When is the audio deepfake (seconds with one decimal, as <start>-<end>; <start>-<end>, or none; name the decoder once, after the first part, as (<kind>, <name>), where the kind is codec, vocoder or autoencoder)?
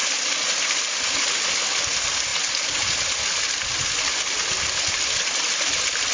none